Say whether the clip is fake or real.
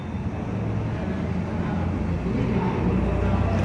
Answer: real